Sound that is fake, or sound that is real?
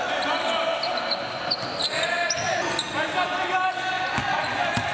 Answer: real